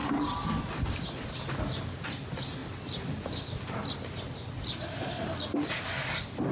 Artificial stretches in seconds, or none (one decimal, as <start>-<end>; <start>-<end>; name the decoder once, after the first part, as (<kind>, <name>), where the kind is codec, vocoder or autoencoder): none